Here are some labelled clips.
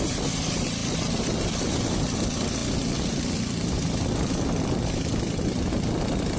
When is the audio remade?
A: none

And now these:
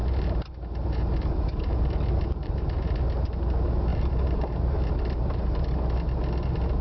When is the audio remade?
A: 0.0-3.0 (vocoder, BigVGAN v2); 3.9-5.6

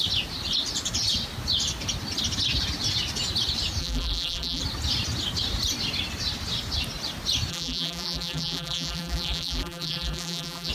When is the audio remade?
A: 3.8-4.6 (vocoder, BigVGAN v2); 7.5-10.7

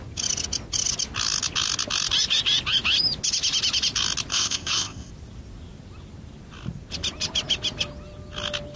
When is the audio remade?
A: 4.3-5.1 (codec, ZipCodec)

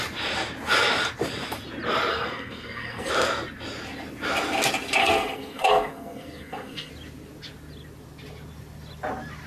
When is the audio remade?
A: 2.1-3.1 (codec, SNAC); 5.0-6.9

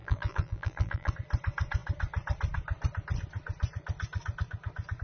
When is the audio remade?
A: 0.0-1.1 (vocoder, BigVGAN v2)

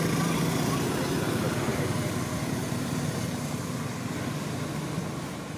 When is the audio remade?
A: 1.7-2.6 (vocoder, BigVGAN v2)